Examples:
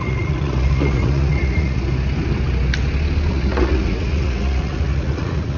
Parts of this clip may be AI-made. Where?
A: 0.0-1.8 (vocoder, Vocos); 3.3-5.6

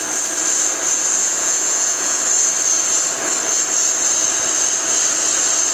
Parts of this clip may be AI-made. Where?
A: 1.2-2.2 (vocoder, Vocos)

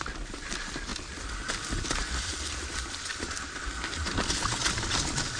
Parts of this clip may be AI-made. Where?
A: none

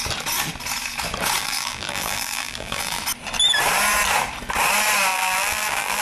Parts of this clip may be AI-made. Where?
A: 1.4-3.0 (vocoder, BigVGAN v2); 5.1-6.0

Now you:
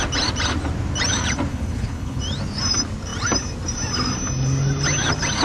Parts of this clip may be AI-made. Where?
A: 1.5-2.2 (codec, HILCodec)

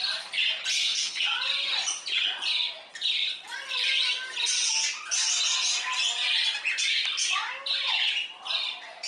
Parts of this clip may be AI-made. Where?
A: 0.8-1.3 (codec, SNAC)

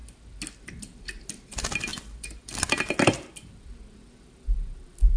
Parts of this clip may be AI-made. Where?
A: 1.9-2.6 (vocoder, BigVGAN v2)

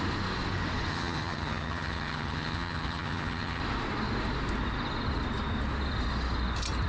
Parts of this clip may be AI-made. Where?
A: 0.9-3.6 (vocoder, HiFi-GAN)